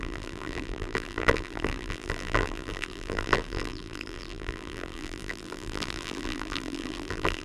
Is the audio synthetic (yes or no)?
yes